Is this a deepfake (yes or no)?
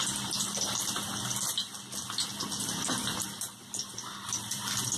no